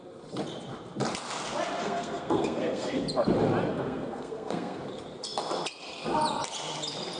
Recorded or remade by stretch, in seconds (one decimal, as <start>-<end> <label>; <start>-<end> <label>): 0.0-1.8 recorded; 1.8-3.0 remade; 3.0-3.7 recorded; 3.7-4.8 remade; 4.8-7.2 recorded